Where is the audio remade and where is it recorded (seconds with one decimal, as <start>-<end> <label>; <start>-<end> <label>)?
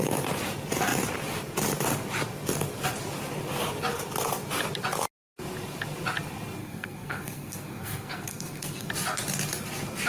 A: 0.0-6.6 recorded; 6.6-8.9 remade; 8.9-10.1 recorded